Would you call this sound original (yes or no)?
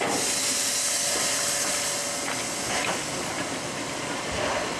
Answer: yes